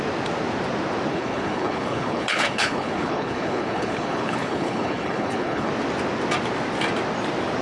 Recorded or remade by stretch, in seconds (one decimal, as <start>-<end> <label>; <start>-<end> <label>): 0.0-1.1 recorded; 1.1-5.7 remade; 5.7-7.6 recorded